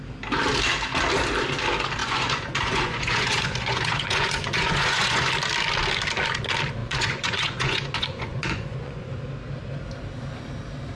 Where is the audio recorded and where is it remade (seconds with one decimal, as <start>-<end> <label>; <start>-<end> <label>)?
0.0-2.0 recorded; 2.0-5.3 remade; 5.3-6.8 recorded; 6.8-9.1 remade; 9.1-11.0 recorded